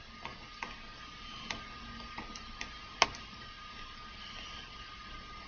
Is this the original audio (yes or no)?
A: yes